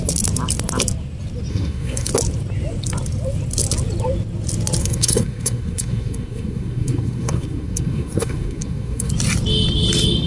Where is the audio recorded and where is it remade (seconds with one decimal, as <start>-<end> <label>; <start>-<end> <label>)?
0.0-1.5 recorded; 1.5-2.1 remade; 2.1-4.8 recorded; 4.8-9.1 remade; 9.1-10.3 recorded